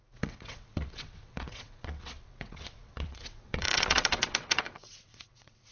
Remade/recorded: remade